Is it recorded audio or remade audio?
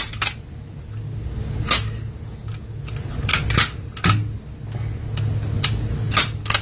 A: recorded